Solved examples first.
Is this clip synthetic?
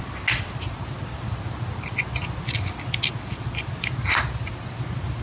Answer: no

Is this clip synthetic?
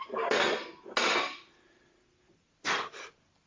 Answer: no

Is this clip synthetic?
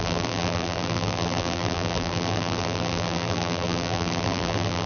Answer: yes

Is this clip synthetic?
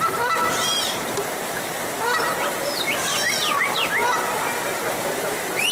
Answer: yes